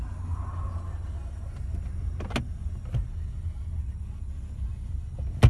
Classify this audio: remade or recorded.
recorded